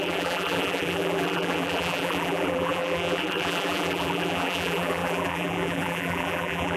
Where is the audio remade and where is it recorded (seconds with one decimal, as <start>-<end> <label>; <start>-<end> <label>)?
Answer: 0.0-6.8 remade